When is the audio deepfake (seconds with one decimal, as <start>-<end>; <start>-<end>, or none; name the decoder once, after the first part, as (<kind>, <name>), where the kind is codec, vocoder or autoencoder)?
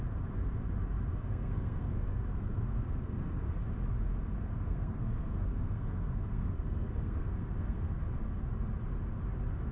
1.1-3.4 (codec, SNAC); 4.5-8.0